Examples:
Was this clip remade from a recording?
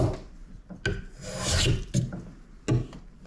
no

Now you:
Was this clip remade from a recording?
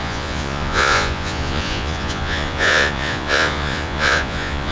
yes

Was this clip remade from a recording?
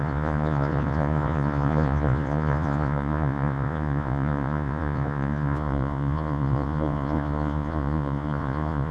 yes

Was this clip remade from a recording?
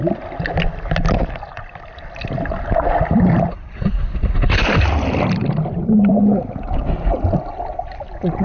no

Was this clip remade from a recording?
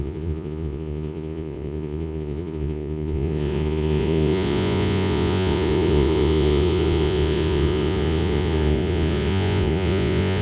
yes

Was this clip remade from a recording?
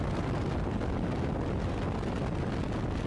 no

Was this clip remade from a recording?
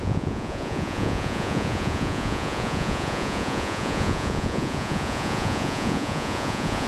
yes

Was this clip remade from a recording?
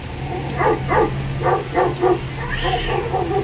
no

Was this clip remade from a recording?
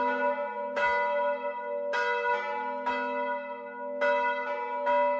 no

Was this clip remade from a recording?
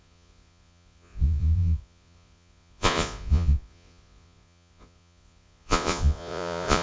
yes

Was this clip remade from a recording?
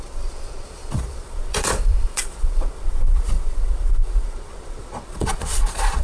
yes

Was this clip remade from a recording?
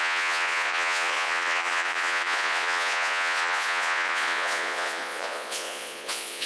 yes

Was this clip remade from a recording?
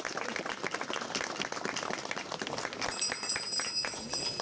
no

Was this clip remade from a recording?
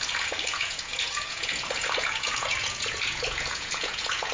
yes